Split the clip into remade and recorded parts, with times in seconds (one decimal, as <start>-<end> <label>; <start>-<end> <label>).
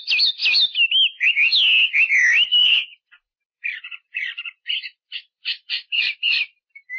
0.0-2.6 recorded; 2.6-7.0 remade